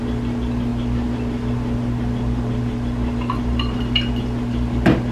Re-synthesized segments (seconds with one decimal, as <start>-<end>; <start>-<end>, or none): none